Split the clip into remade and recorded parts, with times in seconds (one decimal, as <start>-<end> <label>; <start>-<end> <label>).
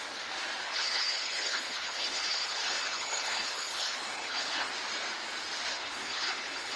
0.0-0.6 recorded; 0.6-4.7 remade; 4.7-5.7 recorded; 5.7-6.8 remade